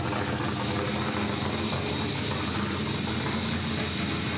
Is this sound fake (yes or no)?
no